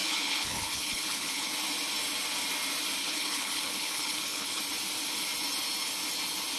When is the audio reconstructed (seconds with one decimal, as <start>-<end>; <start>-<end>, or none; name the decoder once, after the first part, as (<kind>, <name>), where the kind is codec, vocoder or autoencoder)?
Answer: 0.0-1.5 (codec, HILCodec); 3.0-4.6